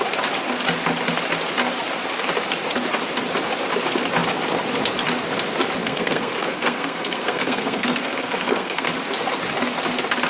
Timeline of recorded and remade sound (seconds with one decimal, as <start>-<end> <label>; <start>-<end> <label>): 0.0-5.8 recorded; 5.8-8.9 remade; 8.9-10.3 recorded